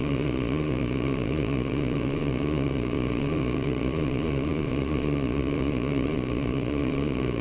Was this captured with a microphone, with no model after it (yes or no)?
no